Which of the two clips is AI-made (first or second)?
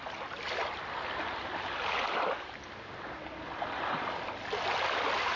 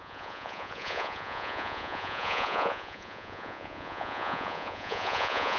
second